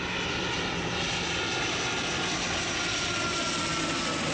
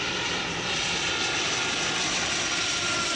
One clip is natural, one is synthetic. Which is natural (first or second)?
first